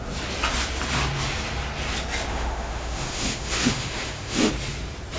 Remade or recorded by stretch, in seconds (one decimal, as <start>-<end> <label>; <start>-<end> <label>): 0.0-2.3 recorded; 2.3-4.5 remade; 4.5-5.2 recorded